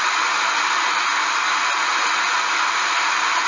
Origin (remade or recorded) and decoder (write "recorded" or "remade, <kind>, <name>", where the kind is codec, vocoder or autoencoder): recorded